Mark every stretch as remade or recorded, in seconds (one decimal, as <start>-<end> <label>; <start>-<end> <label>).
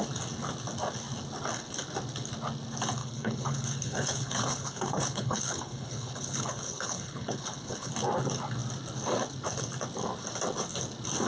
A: 0.0-3.0 recorded; 3.0-7.9 remade; 7.9-11.3 recorded